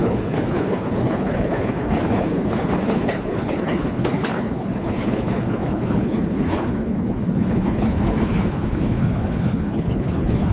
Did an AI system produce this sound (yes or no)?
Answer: yes